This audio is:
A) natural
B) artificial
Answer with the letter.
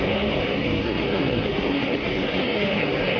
B